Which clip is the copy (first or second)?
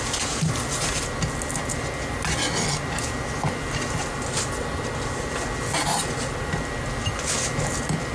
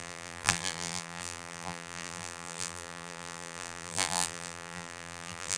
second